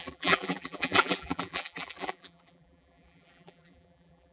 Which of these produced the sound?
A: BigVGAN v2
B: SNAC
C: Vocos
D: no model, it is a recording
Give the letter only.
A